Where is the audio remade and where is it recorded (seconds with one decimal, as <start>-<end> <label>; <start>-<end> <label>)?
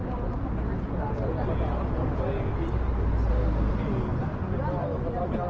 0.0-5.5 recorded